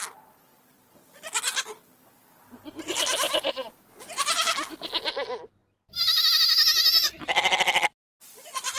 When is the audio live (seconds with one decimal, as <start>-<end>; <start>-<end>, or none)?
0.0-8.8